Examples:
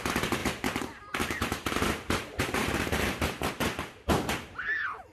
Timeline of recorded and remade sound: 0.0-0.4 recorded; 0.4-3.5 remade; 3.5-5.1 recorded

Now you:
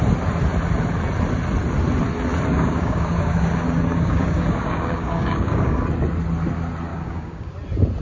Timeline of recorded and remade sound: 0.0-2.5 recorded; 2.5-5.8 remade; 5.8-6.9 recorded; 6.9-7.5 remade; 7.5-8.0 recorded

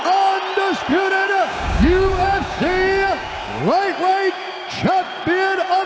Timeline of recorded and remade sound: 0.0-0.9 recorded; 0.9-3.6 remade; 3.6-4.1 recorded; 4.1-4.8 remade; 4.8-5.9 recorded